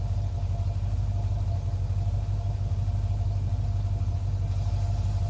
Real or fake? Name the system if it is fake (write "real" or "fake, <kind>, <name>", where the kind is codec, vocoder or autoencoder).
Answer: real